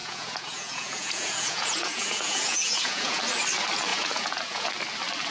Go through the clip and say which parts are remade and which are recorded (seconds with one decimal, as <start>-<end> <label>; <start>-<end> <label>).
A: 0.0-3.2 remade; 3.2-3.9 recorded; 3.9-4.7 remade; 4.7-5.3 recorded